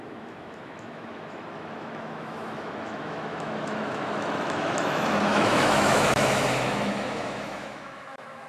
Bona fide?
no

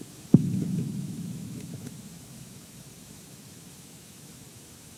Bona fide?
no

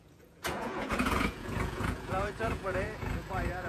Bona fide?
no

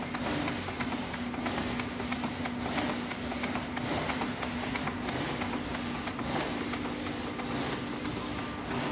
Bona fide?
yes